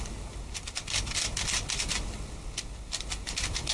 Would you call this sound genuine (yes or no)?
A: yes